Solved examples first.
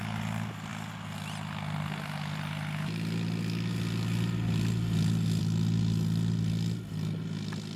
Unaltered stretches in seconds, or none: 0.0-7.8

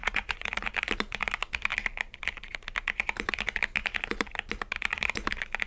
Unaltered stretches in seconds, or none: 0.7-5.7